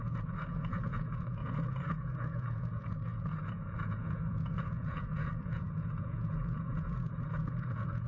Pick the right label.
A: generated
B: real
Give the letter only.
A